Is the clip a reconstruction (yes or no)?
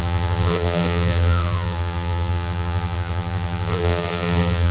yes